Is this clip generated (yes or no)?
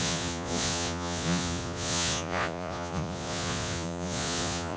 yes